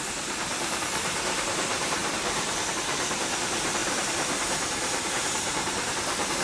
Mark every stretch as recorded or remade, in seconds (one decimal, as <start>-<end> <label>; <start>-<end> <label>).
0.0-6.4 remade